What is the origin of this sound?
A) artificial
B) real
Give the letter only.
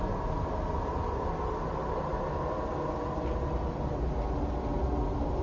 B